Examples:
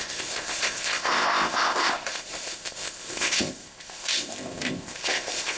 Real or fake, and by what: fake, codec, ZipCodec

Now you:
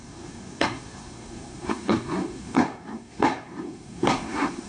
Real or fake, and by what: fake, codec, SNAC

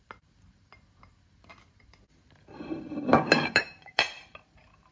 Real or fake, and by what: fake, vocoder, BigVGAN v2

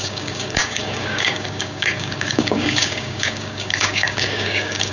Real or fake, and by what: fake, codec, DAC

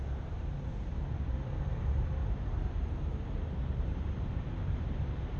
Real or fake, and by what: fake, vocoder, BigVGAN v2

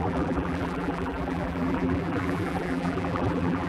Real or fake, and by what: fake, vocoder, BigVGAN v2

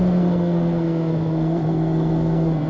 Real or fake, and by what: fake, codec, SNAC